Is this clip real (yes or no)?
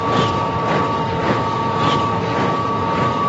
yes